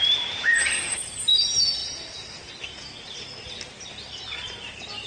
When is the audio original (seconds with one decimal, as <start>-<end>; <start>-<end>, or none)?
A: 1.8-4.3